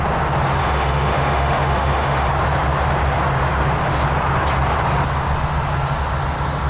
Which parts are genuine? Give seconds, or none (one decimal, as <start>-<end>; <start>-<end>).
0.0-0.6; 2.3-6.7